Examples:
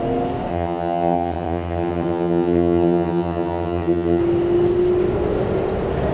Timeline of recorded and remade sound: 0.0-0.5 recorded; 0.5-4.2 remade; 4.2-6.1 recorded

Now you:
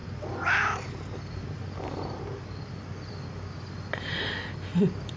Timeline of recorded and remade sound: 0.0-5.2 recorded

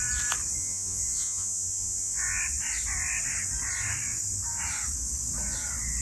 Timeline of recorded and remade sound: 0.0-0.6 recorded; 0.6-2.4 remade; 2.4-6.0 recorded

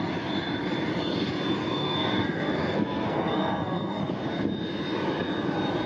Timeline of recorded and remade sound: 0.0-1.6 recorded; 1.6-4.0 remade; 4.0-5.9 recorded

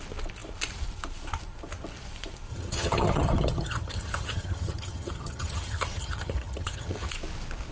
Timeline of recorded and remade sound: 0.0-2.5 recorded; 2.5-7.1 remade; 7.1-7.7 recorded

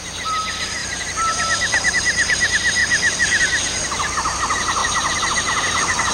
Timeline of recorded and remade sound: 0.0-0.8 recorded; 0.8-1.9 remade; 1.9-6.1 recorded